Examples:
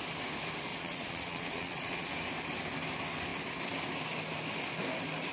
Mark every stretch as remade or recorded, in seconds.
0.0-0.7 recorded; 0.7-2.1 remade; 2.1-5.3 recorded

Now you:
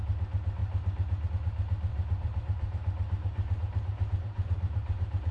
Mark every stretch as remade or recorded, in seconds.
0.0-0.6 recorded; 0.6-1.3 remade; 1.3-1.9 recorded; 1.9-5.3 remade

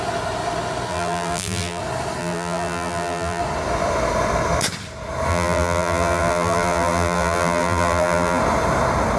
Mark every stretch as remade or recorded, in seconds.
0.0-0.9 recorded; 0.9-1.8 remade; 1.8-2.2 recorded; 2.2-3.4 remade; 3.4-5.3 recorded; 5.3-8.4 remade; 8.4-9.2 recorded

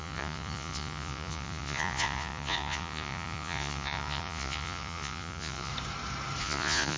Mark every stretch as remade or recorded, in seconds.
0.0-5.7 remade; 5.7-6.4 recorded; 6.4-7.0 remade

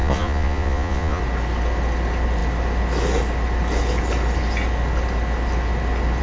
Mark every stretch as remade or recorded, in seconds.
0.0-1.2 remade; 1.2-6.2 recorded